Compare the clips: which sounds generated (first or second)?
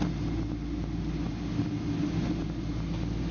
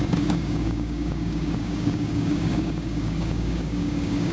second